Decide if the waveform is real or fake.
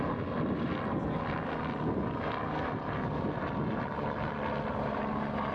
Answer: real